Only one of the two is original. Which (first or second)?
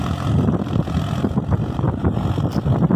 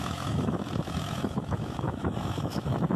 first